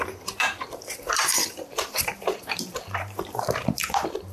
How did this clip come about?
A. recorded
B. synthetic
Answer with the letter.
B